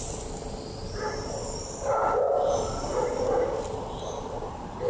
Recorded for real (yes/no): yes